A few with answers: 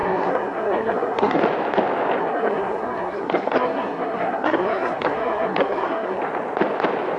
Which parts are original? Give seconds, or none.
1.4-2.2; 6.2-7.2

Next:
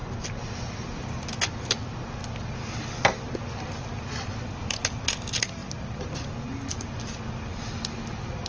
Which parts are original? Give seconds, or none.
0.0-8.5

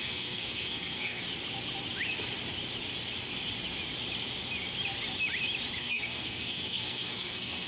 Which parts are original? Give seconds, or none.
1.2-5.8

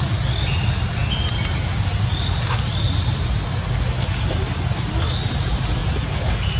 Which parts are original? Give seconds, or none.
0.0-6.6